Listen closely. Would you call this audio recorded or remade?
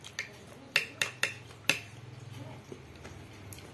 recorded